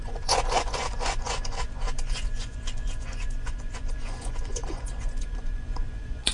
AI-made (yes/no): yes